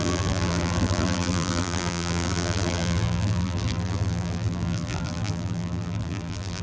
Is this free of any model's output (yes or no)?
no